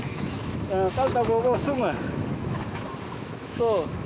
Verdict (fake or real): fake